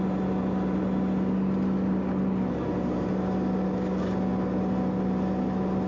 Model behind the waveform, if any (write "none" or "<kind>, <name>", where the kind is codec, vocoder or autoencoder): none